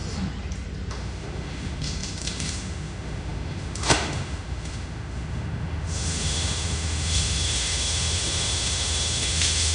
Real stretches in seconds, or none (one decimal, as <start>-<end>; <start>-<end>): 0.0-0.9